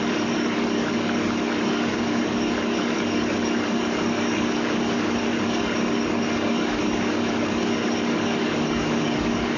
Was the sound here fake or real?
fake